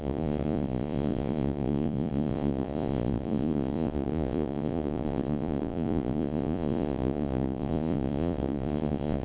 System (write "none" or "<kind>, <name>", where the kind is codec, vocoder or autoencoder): vocoder, Vocos